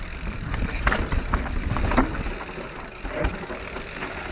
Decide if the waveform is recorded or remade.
recorded